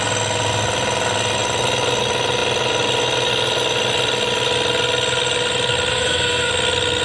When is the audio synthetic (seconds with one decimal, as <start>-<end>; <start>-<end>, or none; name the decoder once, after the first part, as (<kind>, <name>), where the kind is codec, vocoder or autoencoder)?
5.9-6.5 (codec, SNAC)